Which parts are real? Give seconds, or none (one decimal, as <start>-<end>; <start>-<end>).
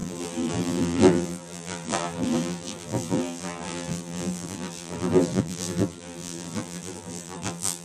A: none